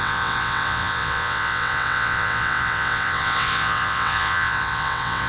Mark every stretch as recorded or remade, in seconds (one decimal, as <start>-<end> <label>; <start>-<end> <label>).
0.0-5.3 remade